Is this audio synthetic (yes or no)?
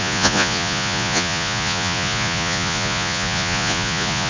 yes